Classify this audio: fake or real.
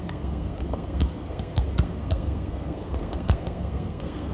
fake